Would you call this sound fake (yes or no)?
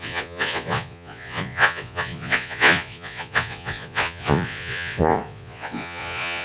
yes